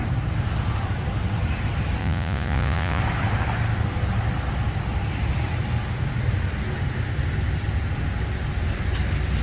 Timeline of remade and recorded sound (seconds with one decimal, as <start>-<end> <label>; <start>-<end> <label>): 0.0-2.0 recorded; 2.0-3.0 remade; 3.0-9.4 recorded